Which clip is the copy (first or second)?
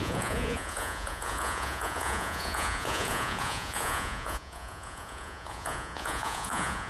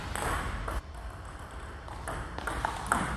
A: first